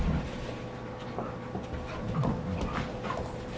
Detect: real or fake real